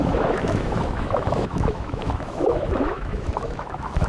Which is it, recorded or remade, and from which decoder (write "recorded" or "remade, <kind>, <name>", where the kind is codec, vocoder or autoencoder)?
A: remade, autoencoder, DAC-VAE